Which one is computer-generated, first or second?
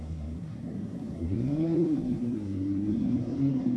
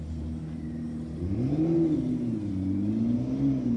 first